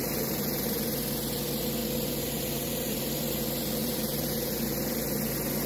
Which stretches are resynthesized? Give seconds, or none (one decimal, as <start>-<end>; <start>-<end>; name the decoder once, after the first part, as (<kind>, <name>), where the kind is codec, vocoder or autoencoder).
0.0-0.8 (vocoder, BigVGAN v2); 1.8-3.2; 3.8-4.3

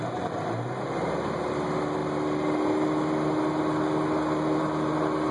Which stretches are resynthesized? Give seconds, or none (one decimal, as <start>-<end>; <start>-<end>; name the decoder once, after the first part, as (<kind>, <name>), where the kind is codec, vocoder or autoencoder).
none

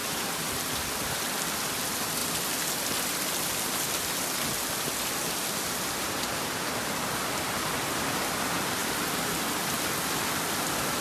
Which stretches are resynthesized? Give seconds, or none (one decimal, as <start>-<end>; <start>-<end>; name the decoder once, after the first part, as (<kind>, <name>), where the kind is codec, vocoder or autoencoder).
0.0-1.4 (vocoder, BigVGAN v2); 8.8-9.3

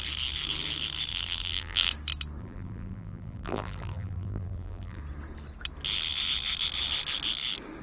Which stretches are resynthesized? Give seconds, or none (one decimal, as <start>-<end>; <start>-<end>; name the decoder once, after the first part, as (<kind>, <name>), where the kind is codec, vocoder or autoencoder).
1.1-1.9 (vocoder, BigVGAN v2); 2.4-5.0